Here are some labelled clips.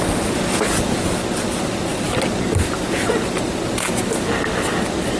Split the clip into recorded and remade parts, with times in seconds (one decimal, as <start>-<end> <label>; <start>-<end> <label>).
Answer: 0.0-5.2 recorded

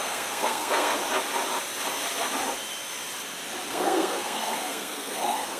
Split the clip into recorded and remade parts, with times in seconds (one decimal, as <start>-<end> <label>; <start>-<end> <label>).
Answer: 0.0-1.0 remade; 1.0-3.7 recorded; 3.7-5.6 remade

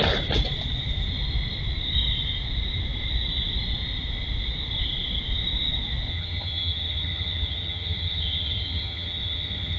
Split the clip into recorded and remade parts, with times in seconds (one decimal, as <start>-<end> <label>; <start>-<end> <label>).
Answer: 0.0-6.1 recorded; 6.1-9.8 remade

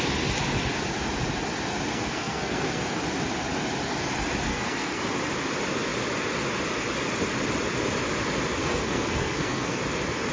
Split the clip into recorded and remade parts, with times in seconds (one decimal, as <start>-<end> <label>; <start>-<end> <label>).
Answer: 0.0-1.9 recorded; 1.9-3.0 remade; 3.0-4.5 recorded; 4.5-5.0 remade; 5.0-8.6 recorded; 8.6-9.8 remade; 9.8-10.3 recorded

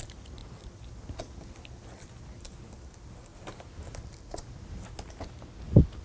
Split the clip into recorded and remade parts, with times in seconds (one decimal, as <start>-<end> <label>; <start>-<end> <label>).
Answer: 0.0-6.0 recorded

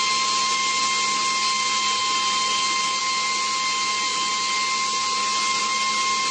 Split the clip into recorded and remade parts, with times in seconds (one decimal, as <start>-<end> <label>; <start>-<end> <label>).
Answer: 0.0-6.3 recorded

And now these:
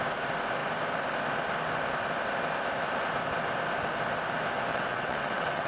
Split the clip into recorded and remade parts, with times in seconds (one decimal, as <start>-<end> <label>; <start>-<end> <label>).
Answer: 0.0-4.7 recorded; 4.7-5.7 remade